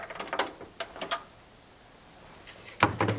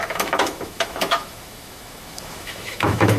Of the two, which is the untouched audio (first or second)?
first